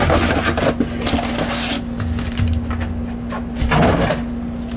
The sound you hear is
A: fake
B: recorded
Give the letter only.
B